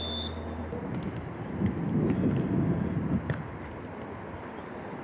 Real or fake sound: real